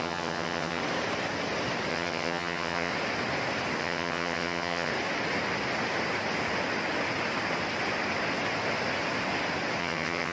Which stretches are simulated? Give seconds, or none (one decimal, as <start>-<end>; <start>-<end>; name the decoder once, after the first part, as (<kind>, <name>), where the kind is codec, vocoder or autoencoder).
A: 0.0-0.8 (vocoder, HiFi-GAN); 1.9-2.9; 3.8-4.9; 9.8-10.3